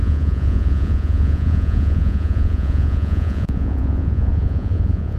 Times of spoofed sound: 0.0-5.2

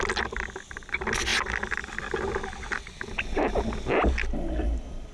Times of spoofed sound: none

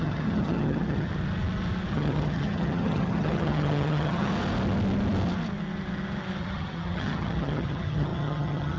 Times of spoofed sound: 0.0-1.1; 1.9-4.3; 6.4-8.8

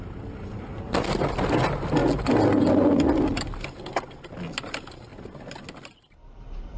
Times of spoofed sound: none

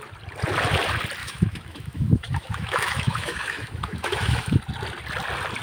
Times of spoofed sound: 1.2-4.6

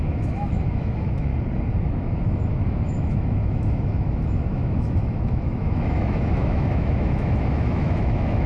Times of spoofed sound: 0.0-1.3; 1.8-8.5